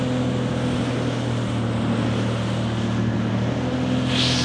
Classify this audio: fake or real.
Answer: real